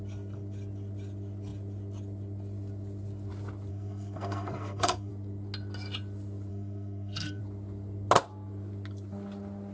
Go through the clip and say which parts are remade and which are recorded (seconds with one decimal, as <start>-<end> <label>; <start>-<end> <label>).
0.0-3.7 recorded; 3.7-5.1 remade; 5.1-6.5 recorded; 6.5-7.4 remade; 7.4-9.7 recorded